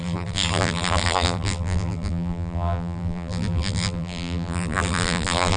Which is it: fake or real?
fake